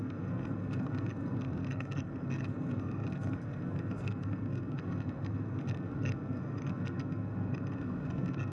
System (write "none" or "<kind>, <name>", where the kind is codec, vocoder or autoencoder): codec, SNAC